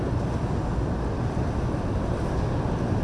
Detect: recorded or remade recorded